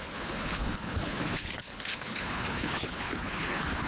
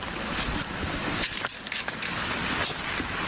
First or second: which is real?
second